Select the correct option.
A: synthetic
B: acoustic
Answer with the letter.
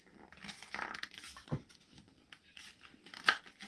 B